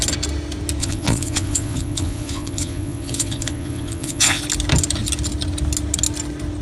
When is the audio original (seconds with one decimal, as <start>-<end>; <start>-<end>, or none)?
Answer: 0.0-0.8; 4.4-6.6